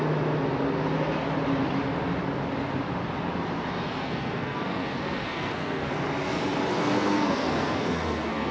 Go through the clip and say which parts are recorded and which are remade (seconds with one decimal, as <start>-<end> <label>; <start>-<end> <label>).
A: 0.0-4.0 recorded; 4.0-5.9 remade; 5.9-6.7 recorded; 6.7-8.5 remade